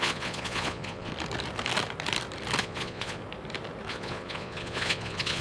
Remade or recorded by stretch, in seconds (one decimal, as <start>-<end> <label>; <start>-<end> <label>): 0.0-1.1 remade; 1.1-2.6 recorded; 2.6-3.2 remade; 3.2-3.9 recorded; 3.9-5.4 remade